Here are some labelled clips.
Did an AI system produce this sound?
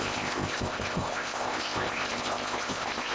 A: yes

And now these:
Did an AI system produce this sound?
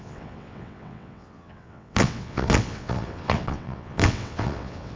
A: yes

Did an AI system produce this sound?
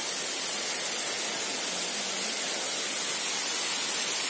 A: no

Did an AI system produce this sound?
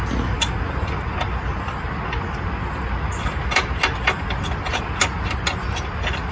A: no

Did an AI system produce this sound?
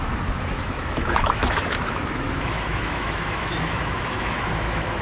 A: yes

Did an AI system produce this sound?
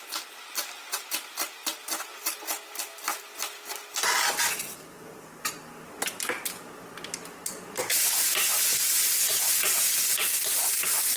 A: no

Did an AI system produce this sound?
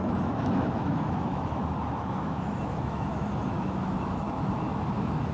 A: yes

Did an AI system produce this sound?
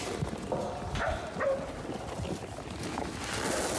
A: no